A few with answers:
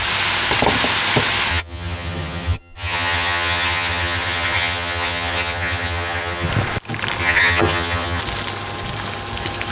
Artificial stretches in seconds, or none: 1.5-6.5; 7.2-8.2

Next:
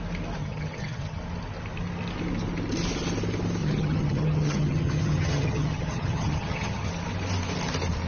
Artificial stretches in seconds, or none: 0.4-1.2; 3.6-6.9

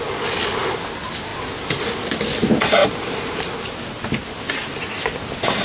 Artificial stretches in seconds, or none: none

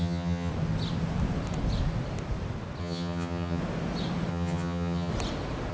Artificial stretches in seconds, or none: 0.0-0.5; 2.8-3.6; 4.3-5.1

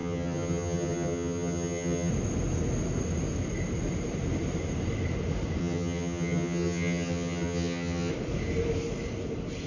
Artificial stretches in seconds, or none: 0.0-2.1; 5.6-8.1

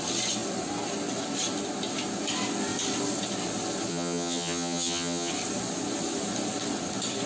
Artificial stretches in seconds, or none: 3.9-5.3

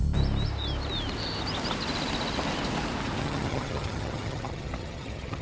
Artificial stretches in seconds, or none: 3.2-5.4

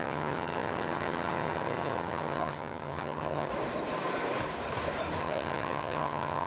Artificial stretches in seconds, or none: 0.0-3.5; 5.2-6.5